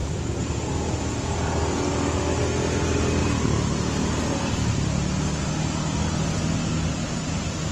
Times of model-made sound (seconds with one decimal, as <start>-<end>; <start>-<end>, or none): 1.9-2.4